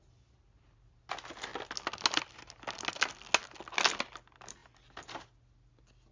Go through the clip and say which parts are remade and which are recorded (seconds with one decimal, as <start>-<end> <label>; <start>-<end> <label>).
0.0-6.1 recorded